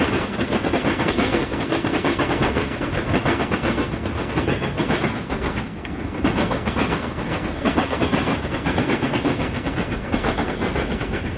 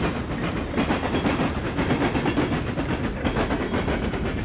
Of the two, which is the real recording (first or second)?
second